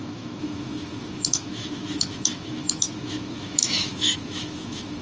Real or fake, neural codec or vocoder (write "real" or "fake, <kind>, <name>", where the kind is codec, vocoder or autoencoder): fake, autoencoder, DAC-VAE